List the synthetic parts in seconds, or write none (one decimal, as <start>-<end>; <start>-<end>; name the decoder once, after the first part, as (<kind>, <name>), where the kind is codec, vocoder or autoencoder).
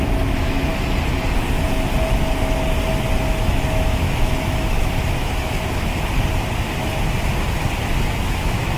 0.0-0.7 (autoencoder, DAC-VAE); 3.4-5.9; 8.2-8.8